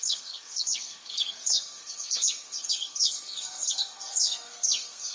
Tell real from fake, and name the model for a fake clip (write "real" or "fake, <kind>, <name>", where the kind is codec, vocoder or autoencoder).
fake, codec, SNAC